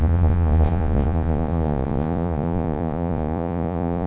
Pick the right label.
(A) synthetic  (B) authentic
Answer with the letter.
A